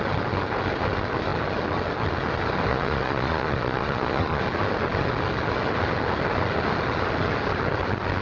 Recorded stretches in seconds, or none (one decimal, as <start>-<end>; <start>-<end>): 0.0-2.7; 4.4-8.2